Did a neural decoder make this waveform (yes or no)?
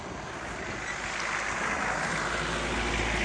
no